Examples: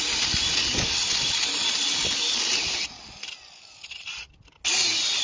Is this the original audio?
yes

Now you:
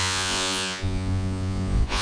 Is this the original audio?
no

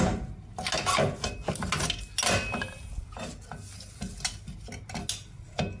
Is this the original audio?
yes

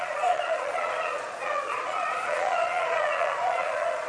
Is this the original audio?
no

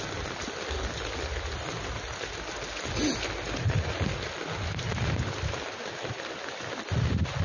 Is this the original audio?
yes